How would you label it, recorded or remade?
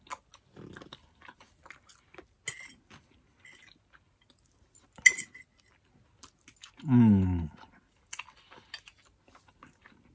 recorded